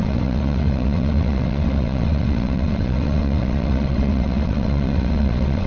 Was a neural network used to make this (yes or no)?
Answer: yes